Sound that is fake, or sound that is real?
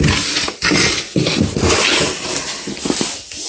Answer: real